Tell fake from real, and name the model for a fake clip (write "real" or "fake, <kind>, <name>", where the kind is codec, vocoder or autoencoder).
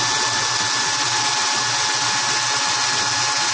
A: real